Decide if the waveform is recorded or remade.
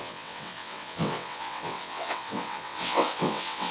remade